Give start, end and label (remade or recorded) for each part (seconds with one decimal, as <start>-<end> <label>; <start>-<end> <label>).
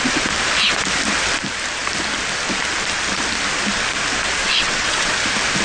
0.0-4.4 recorded; 4.4-5.1 remade; 5.1-5.6 recorded